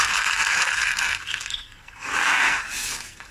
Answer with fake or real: fake